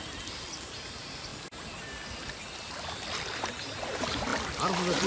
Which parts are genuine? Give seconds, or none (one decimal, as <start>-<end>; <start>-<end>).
0.0-4.3